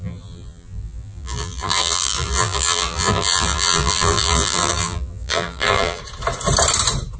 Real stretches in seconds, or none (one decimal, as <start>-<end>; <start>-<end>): 6.0-7.2

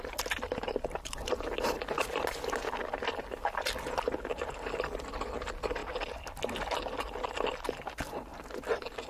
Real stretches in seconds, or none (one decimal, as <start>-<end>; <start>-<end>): 0.0-9.1

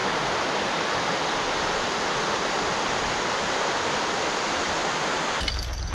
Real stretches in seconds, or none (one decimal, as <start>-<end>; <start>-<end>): 0.0-5.9

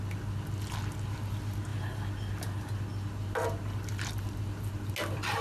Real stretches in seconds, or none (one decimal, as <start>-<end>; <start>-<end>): 0.0-5.4

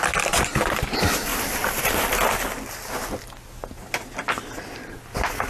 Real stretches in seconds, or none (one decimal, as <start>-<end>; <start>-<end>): 0.0-1.3; 1.8-5.5

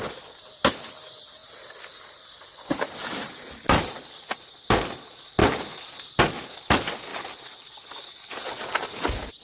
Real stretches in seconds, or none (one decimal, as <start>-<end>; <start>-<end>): 0.0-9.4

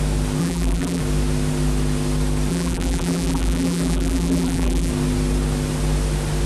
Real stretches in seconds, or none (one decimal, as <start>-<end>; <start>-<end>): 0.0-0.4; 1.0-2.5; 4.9-6.5